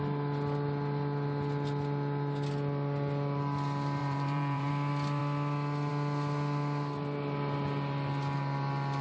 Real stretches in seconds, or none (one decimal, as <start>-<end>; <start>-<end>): 0.0-4.0; 4.7-9.0

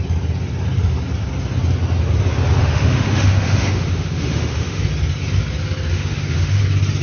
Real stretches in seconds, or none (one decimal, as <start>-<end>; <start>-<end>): 0.0-2.6; 4.8-5.9; 6.6-7.0

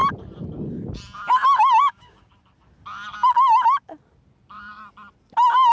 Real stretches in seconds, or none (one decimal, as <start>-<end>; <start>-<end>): 0.0-1.8; 2.3-5.7